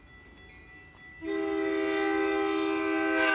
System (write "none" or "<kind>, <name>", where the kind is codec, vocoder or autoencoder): none